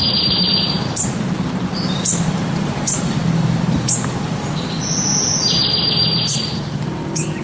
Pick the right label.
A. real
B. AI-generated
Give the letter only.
B